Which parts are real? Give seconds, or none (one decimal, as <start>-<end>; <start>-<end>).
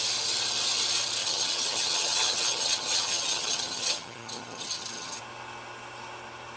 0.0-1.2; 5.2-6.6